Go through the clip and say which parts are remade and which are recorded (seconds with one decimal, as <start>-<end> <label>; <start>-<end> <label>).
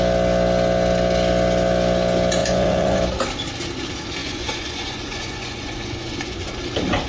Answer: 0.0-2.4 recorded; 2.4-3.0 remade; 3.0-4.2 recorded; 4.2-6.5 remade; 6.5-7.1 recorded